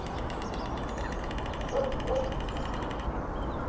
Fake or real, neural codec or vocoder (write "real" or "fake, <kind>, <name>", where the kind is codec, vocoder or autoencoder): real